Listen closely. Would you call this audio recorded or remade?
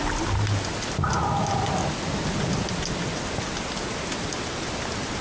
recorded